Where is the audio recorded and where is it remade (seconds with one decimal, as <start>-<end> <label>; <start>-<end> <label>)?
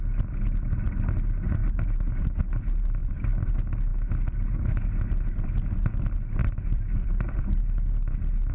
0.0-3.0 recorded; 3.0-3.5 remade; 3.5-6.4 recorded; 6.4-7.6 remade; 7.6-8.5 recorded